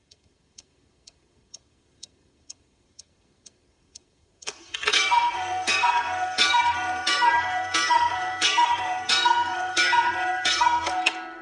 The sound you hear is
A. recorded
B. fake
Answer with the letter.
B